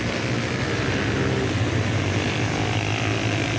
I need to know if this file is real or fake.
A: real